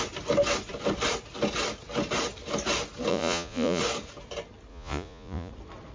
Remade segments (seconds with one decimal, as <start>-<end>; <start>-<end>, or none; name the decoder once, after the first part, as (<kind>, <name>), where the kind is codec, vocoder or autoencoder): 3.1-3.8 (vocoder, Vocos); 4.7-5.5